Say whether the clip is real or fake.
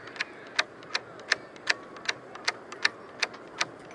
real